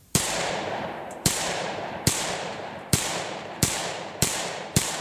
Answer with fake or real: fake